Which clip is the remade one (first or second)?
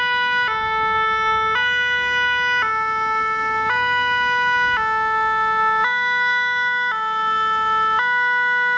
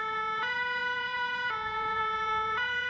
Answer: second